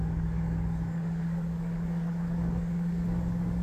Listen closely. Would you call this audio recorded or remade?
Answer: remade